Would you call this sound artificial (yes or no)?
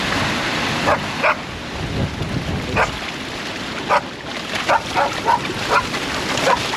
no